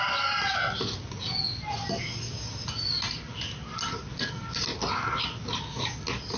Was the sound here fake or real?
real